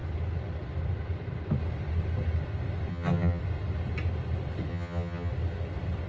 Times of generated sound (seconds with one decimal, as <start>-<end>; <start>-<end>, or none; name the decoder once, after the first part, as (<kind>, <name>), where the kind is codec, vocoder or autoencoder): 2.9-3.4 (vocoder, HiFi-GAN); 4.7-5.3